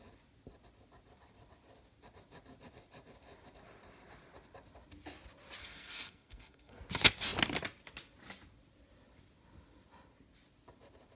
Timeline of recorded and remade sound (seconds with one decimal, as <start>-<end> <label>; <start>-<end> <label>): 0.0-5.6 recorded; 5.6-6.8 remade; 6.8-11.2 recorded